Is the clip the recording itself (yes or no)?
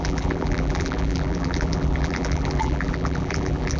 no